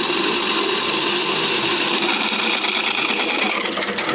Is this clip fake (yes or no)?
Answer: no